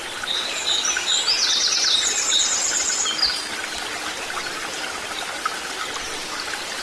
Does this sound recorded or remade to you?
recorded